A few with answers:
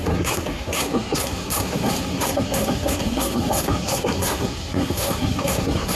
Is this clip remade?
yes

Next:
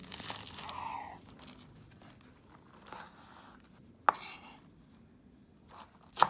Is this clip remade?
no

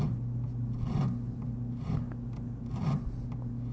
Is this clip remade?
no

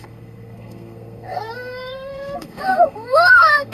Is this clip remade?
yes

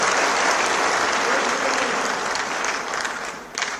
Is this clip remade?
no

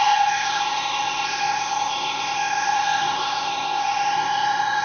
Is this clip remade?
yes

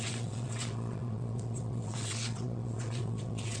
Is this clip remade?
yes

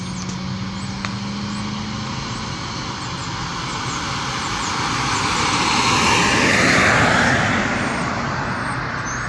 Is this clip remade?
no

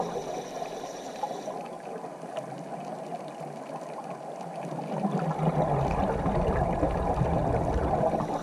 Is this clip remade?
no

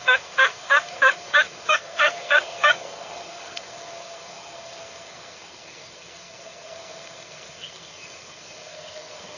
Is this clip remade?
yes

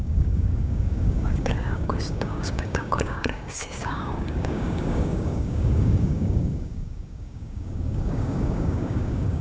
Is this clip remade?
yes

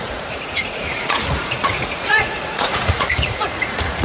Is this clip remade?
yes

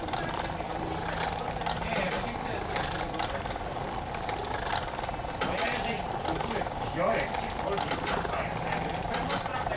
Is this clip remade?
no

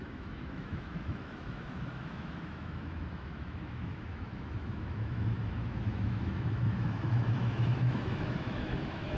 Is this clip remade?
yes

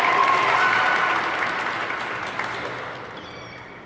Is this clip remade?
no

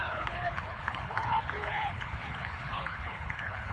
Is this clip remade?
yes